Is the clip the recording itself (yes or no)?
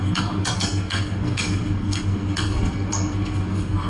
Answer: no